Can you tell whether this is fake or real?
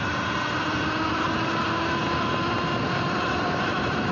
real